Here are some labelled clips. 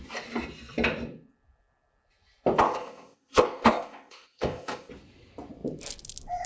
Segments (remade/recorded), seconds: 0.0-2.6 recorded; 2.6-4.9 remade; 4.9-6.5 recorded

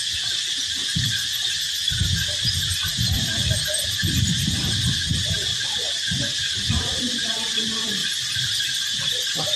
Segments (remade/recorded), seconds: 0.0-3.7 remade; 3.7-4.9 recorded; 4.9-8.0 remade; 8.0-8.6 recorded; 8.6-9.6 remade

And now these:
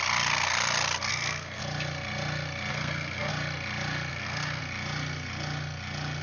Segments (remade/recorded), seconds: 0.0-1.1 recorded; 1.1-1.6 remade; 1.6-2.7 recorded; 2.7-3.3 remade; 3.3-4.1 recorded; 4.1-4.6 remade; 4.6-6.2 recorded

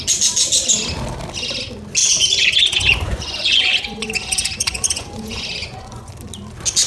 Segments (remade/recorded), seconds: 0.0-2.0 recorded; 2.0-6.1 remade; 6.1-6.9 recorded

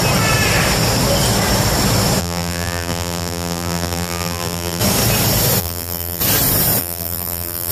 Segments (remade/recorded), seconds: 0.0-2.2 recorded; 2.2-4.8 remade; 4.8-5.6 recorded; 5.6-6.2 remade; 6.2-6.8 recorded; 6.8-7.7 remade

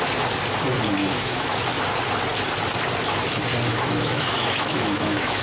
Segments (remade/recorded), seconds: 0.0-1.0 recorded; 1.0-1.6 remade; 1.6-3.7 recorded; 3.7-5.4 remade

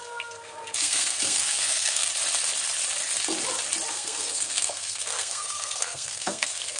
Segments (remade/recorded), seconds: 0.0-2.1 remade; 2.1-3.9 recorded; 3.9-6.8 remade

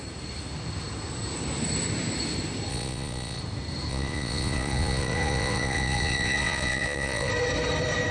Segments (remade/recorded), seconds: 0.0-2.7 recorded; 2.7-3.4 remade; 3.4-3.9 recorded; 3.9-7.3 remade; 7.3-8.1 recorded